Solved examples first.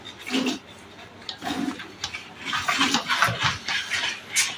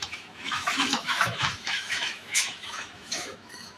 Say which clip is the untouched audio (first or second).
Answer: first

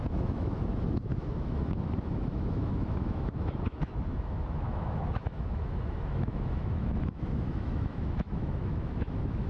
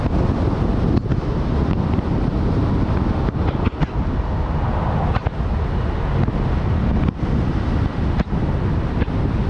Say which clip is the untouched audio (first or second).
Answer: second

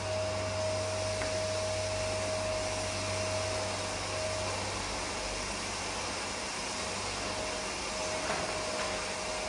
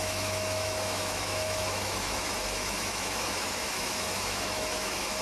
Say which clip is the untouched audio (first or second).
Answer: first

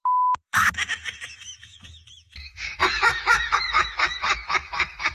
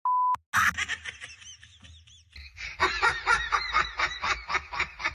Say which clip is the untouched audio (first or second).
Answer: second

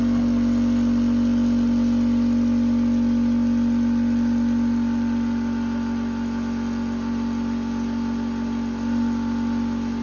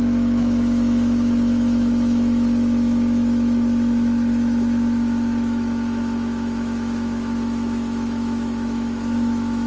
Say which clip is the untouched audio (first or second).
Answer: first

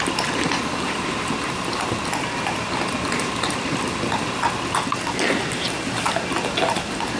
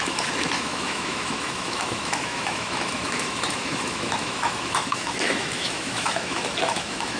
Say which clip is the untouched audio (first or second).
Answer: first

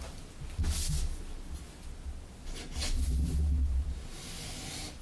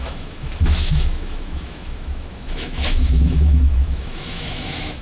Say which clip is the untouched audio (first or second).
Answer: first